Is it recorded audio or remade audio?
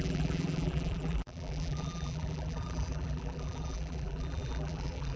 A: remade